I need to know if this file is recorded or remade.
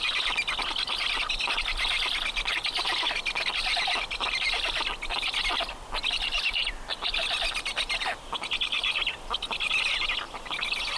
recorded